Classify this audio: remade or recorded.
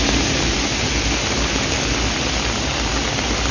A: recorded